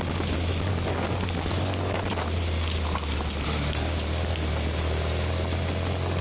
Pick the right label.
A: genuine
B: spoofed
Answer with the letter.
A